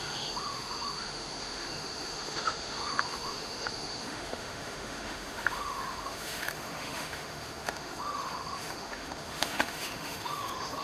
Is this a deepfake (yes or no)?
yes